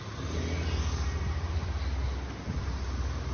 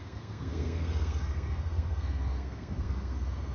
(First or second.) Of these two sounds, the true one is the first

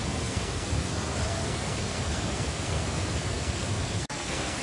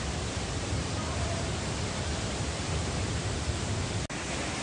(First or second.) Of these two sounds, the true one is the second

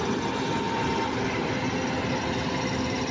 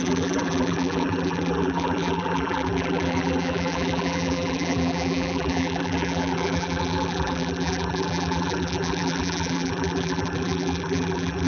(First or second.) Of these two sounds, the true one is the first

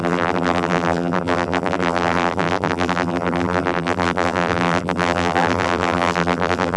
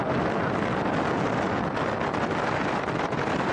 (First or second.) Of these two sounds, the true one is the second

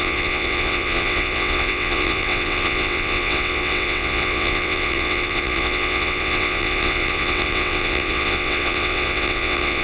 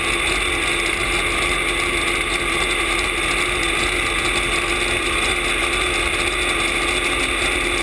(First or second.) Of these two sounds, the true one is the second